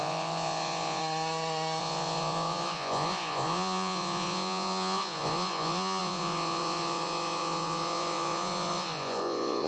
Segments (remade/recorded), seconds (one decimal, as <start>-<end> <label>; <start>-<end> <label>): 0.0-1.0 remade; 1.0-1.8 recorded; 1.8-9.7 remade